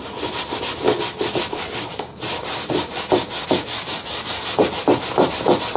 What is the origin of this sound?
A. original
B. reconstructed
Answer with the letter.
A